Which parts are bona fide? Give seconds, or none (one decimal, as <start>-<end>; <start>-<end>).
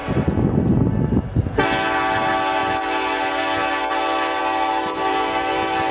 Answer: 0.0-5.9